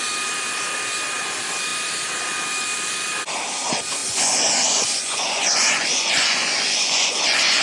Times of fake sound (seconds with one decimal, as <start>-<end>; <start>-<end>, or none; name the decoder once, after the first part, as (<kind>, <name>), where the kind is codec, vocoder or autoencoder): 4.0-7.6 (vocoder, Vocos)